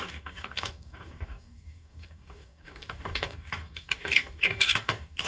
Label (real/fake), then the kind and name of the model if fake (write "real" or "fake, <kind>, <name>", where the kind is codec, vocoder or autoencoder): fake, codec, DAC